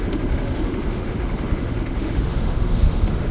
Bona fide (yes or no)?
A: no